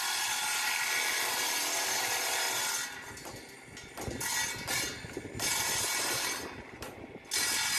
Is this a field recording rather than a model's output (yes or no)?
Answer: yes